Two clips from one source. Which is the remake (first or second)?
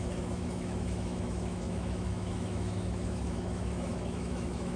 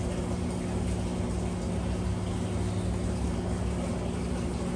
first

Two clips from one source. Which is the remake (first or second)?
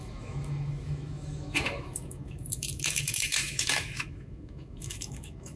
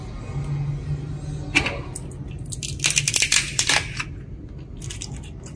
first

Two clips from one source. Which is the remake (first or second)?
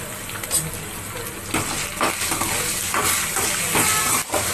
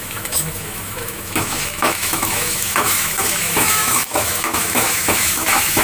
second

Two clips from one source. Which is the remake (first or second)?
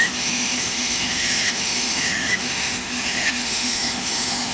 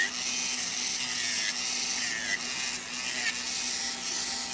first